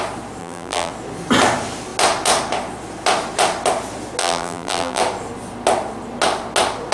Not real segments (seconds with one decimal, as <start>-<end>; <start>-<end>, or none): 0.4-0.9; 4.2-5.0